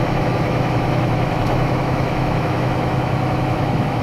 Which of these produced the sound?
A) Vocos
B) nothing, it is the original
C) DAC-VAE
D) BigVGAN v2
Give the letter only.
C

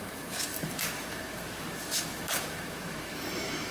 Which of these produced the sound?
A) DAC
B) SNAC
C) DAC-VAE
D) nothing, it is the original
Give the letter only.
C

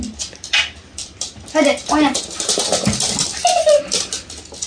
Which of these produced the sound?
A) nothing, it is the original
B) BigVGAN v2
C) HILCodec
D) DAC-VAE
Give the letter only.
A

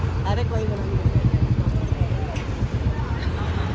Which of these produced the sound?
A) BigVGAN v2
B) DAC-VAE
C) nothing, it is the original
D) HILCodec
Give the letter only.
C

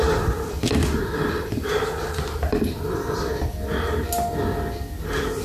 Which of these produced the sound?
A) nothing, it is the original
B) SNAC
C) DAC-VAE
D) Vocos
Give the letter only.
A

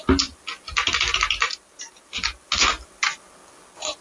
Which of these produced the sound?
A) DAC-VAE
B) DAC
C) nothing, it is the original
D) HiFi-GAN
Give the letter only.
C